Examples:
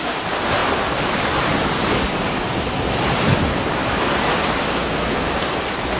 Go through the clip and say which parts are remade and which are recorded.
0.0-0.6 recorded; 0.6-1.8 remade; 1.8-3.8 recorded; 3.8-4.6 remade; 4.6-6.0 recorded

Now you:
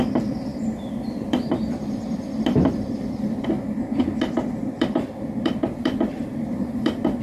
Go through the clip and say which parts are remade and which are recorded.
0.0-0.5 recorded; 0.5-3.5 remade; 3.5-4.6 recorded; 4.6-7.2 remade

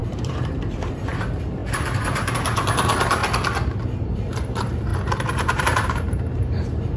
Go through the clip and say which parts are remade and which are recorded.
0.0-3.2 remade; 3.2-3.8 recorded; 3.8-7.0 remade